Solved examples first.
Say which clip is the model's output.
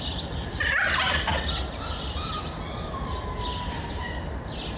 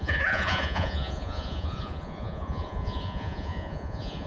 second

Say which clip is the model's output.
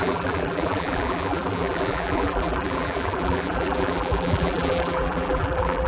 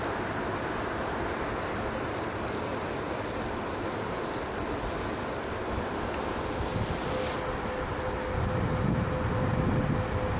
first